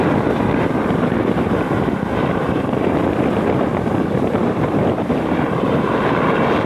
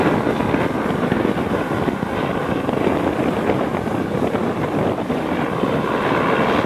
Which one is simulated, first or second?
first